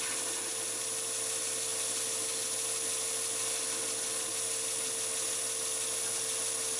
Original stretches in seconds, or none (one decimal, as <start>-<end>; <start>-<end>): 0.0-6.8